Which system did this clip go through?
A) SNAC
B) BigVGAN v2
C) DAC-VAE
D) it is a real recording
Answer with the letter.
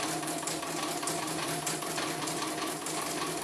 D